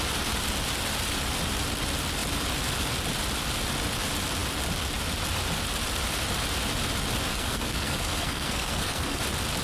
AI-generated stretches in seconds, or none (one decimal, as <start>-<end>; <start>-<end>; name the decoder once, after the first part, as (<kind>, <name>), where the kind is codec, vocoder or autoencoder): 7.3-9.2 (codec, SNAC)